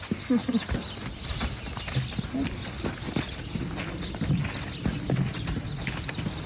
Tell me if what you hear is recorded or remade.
recorded